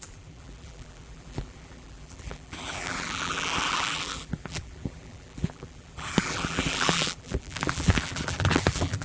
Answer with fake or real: fake